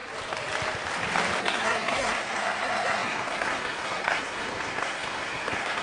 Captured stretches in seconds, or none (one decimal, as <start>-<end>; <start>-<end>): 0.0-1.4